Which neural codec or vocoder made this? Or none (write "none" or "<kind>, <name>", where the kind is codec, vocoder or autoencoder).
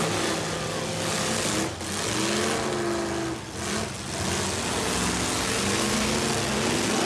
none